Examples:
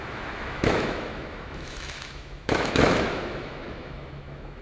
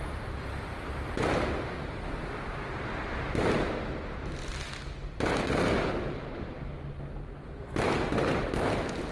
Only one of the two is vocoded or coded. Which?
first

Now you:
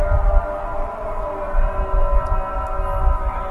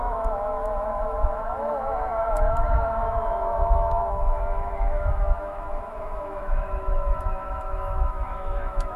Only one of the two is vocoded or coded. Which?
second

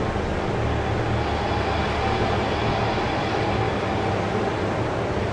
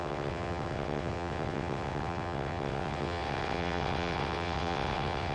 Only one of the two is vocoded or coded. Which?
second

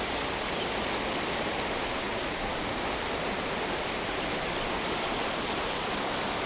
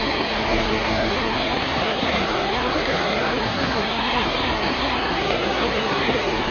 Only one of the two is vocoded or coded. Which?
second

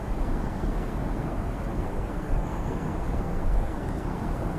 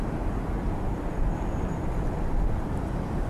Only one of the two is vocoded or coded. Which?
first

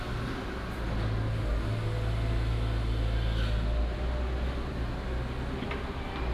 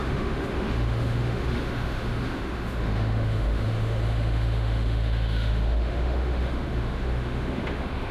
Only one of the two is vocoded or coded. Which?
second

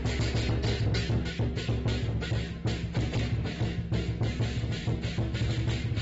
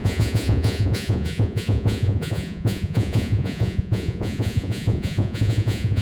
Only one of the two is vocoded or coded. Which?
second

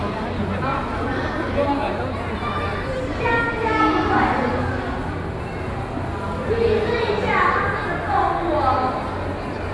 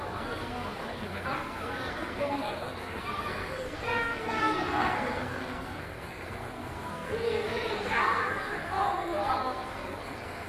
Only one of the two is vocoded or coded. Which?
second